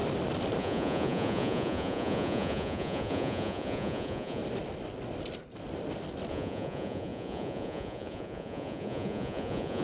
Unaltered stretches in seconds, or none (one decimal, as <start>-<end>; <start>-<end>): 0.0-0.6; 4.4-6.3